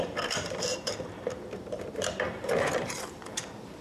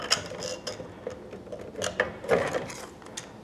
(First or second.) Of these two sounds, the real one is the second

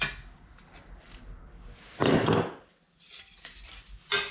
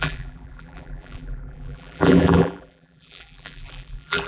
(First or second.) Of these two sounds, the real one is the first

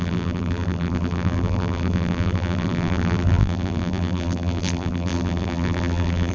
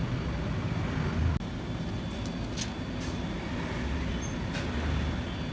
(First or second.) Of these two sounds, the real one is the second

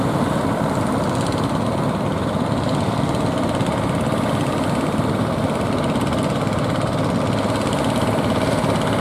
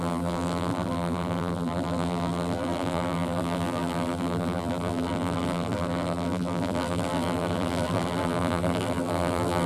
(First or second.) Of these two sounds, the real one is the first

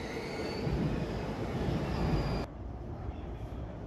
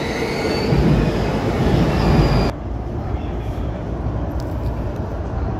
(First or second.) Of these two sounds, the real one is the second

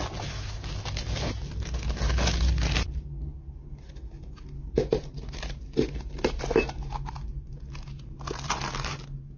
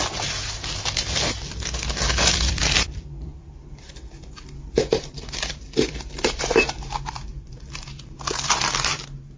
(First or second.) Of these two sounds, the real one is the first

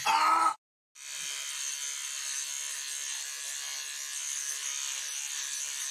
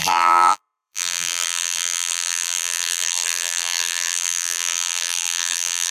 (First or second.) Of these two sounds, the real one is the first